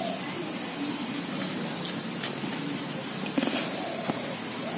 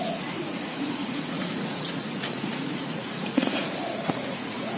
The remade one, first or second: second